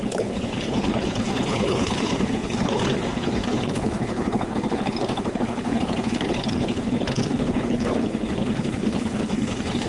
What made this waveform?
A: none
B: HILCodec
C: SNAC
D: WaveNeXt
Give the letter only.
B